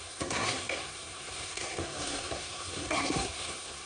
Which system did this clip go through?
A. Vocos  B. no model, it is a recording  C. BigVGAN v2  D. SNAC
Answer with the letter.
D